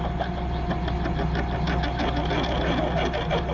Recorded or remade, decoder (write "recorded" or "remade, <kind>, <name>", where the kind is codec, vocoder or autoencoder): recorded